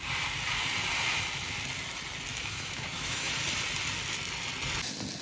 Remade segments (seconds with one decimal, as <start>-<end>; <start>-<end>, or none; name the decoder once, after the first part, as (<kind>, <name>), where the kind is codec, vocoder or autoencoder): 2.3-3.3 (autoencoder, DAC-VAE)